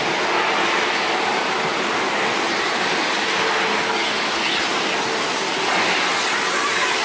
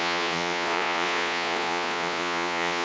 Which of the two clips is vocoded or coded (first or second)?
second